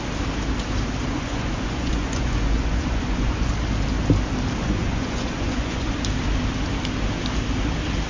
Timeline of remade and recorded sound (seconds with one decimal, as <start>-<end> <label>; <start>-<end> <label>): 0.0-1.1 recorded; 1.1-3.5 remade; 3.5-4.6 recorded; 4.6-5.9 remade; 5.9-8.1 recorded